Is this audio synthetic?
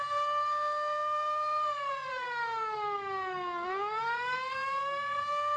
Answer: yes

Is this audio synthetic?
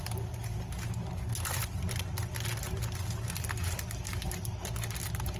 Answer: no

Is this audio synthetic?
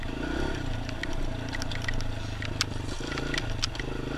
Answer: no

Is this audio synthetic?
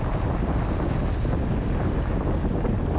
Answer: no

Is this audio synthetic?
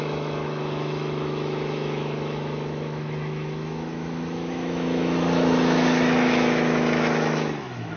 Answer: yes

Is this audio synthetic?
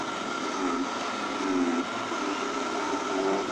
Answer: no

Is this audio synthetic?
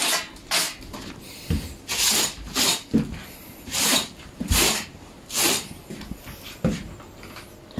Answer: no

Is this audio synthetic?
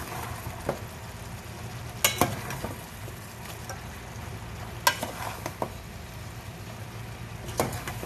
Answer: no